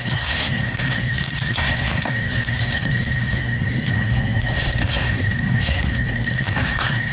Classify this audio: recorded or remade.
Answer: remade